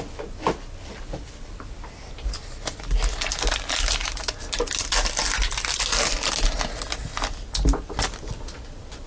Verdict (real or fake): real